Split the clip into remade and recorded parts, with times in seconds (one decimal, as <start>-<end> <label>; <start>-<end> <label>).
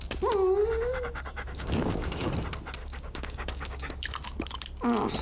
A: 0.0-0.6 recorded; 0.6-2.3 remade; 2.3-2.8 recorded; 2.8-3.9 remade; 3.9-5.2 recorded